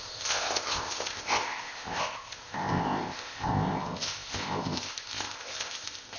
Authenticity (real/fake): fake